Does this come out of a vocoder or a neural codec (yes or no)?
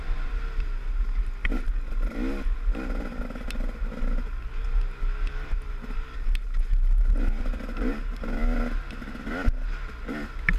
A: no